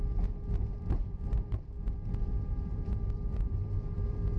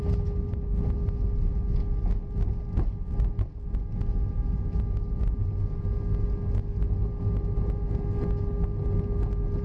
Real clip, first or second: second